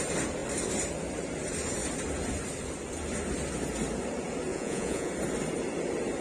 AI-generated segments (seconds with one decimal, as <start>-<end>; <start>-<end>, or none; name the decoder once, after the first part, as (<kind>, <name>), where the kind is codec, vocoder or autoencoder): 4.5-5.1 (vocoder, Vocos)